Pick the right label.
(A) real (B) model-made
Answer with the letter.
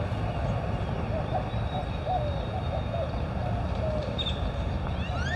A